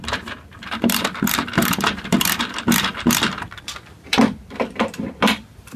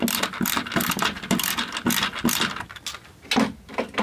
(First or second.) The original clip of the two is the second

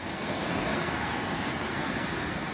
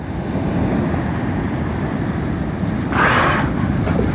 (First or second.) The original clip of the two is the second